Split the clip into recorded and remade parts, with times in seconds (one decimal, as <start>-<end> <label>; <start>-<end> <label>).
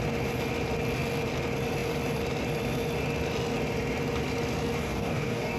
0.0-4.8 recorded; 4.8-5.6 remade